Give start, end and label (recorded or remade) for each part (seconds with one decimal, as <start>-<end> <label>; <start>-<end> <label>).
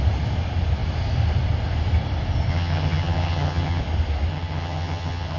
0.0-2.5 recorded; 2.5-3.8 remade; 3.8-4.3 recorded; 4.3-5.4 remade